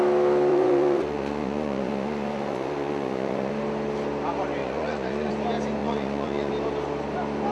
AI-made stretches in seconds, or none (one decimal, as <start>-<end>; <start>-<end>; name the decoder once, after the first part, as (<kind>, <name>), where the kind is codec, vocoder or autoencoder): 0.5-3.5 (vocoder, Vocos); 4.6-5.3; 5.8-6.5